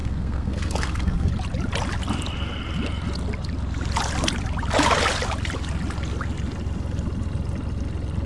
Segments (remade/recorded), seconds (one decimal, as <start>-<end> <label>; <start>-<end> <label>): 0.0-1.3 remade; 1.3-8.3 recorded